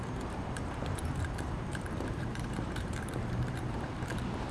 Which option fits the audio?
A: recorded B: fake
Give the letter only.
B